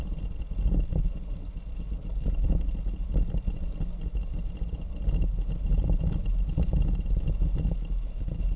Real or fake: real